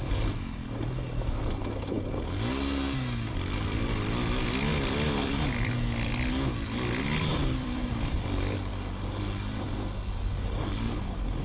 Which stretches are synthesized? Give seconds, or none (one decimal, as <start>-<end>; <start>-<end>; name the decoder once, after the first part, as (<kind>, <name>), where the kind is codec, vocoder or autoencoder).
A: 4.7-5.7 (vocoder, BigVGAN v2); 7.3-7.9; 8.7-9.6